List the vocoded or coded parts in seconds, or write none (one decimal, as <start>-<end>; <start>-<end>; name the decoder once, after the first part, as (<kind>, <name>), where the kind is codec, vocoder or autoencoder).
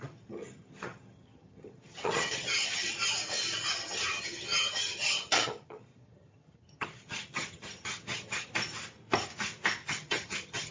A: 0.0-2.9 (vocoder, HiFi-GAN); 3.7-8.5; 9.8-10.7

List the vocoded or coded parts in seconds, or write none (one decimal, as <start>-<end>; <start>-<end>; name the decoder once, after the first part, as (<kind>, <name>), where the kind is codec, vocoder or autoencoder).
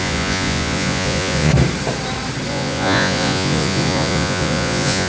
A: 0.0-1.5 (vocoder, Vocos); 2.5-5.1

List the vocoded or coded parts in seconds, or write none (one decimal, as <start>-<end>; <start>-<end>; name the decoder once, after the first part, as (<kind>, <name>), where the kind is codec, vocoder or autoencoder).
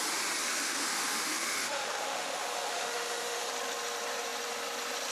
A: 0.4-3.5 (autoencoder, DAC-VAE)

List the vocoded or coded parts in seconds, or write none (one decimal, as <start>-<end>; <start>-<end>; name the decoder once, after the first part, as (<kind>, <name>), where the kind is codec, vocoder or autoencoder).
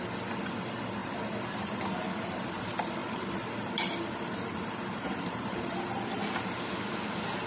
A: 3.0-5.8 (vocoder, BigVGAN v2); 6.2-6.7